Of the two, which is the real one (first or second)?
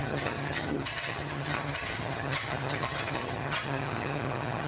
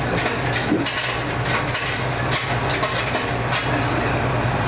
second